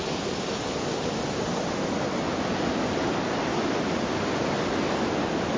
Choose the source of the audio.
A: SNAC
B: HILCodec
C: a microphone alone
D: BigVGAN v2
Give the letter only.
C